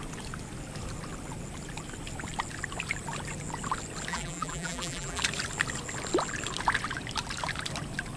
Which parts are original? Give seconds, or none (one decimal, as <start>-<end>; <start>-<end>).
0.0-4.1; 5.2-8.2